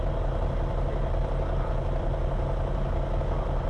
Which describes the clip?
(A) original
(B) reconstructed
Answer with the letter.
A